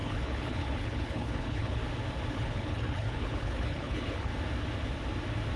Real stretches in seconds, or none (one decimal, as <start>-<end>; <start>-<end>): 1.8-2.3; 4.3-5.6